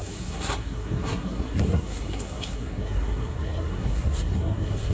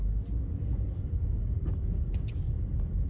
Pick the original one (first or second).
second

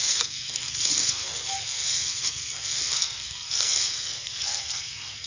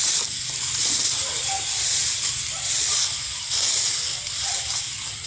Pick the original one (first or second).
second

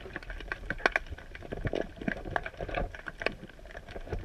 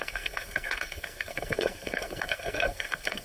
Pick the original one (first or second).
first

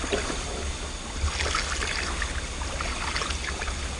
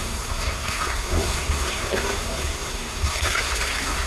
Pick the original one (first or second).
first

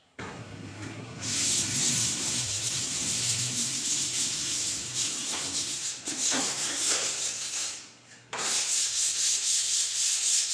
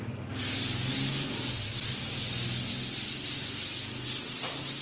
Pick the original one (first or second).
second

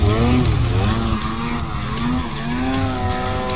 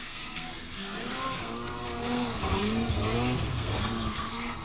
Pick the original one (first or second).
first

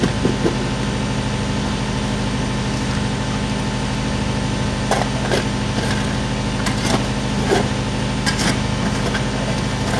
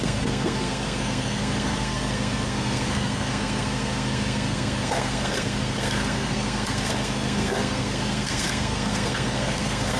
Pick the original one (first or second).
first